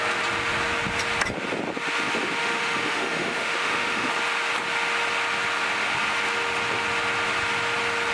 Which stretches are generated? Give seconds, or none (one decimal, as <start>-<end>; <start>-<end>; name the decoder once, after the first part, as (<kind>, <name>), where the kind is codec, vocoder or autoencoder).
2.4-4.1 (autoencoder, DAC-VAE)